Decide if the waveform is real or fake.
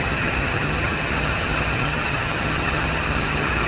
fake